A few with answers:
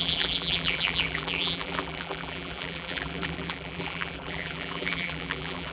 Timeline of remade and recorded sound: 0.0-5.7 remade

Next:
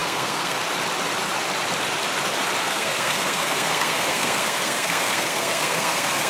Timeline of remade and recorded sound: 0.0-0.6 remade; 0.6-2.6 recorded; 2.6-6.3 remade

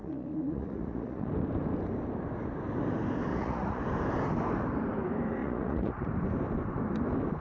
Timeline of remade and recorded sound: 0.0-1.3 remade; 1.3-3.3 recorded; 3.3-3.8 remade; 3.8-5.4 recorded; 5.4-6.1 remade; 6.1-7.4 recorded

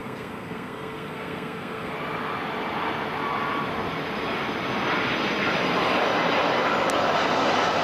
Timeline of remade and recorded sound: 0.0-1.9 remade; 1.9-7.8 recorded

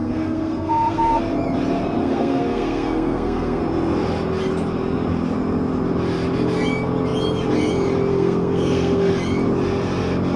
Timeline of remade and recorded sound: 0.0-1.2 remade; 1.2-2.0 recorded; 2.0-3.6 remade; 3.6-8.1 recorded; 8.1-9.1 remade; 9.1-10.4 recorded

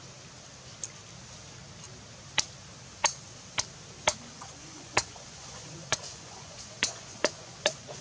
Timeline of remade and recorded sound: 0.0-4.1 recorded; 4.1-8.0 remade

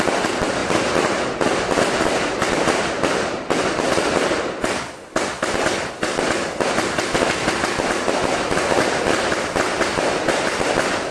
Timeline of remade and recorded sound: 0.0-11.1 recorded

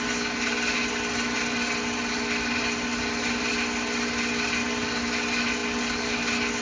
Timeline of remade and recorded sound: 0.0-6.6 recorded